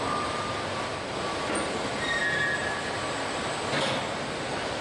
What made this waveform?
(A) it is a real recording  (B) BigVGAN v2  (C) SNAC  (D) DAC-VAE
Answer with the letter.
A